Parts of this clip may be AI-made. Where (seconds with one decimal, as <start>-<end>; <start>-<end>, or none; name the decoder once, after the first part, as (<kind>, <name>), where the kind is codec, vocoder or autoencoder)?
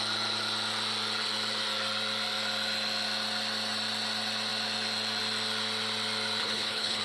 6.4-7.0 (codec, HILCodec)